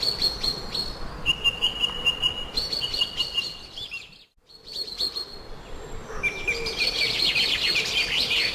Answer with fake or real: real